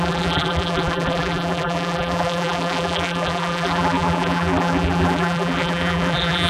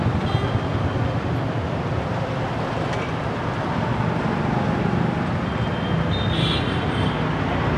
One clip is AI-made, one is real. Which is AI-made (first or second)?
first